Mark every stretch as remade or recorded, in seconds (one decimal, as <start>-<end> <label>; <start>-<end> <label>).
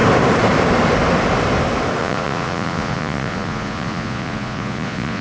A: 0.0-2.0 recorded; 2.0-5.2 remade